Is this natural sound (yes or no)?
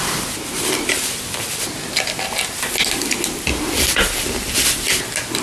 yes